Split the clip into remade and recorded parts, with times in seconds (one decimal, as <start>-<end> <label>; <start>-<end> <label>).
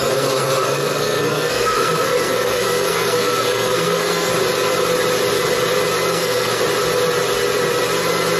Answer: 0.0-4.3 remade; 4.3-6.1 recorded; 6.1-6.6 remade; 6.6-8.4 recorded